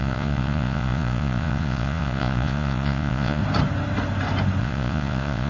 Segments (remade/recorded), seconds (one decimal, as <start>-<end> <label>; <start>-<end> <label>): 0.0-3.4 remade; 3.4-4.6 recorded; 4.6-5.5 remade